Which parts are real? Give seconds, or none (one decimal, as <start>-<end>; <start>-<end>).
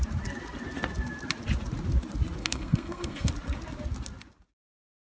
0.0-2.4; 3.3-5.1